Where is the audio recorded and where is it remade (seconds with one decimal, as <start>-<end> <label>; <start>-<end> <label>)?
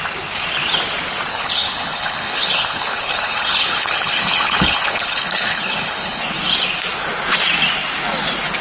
0.0-1.3 recorded; 1.3-6.2 remade; 6.2-8.6 recorded